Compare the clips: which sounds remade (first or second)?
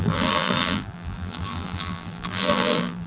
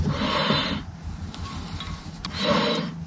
first